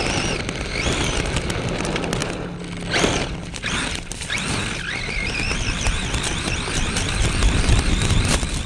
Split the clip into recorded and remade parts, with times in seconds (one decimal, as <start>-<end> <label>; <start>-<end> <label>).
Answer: 0.0-8.7 remade